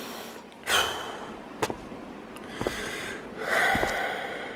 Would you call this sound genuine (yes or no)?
yes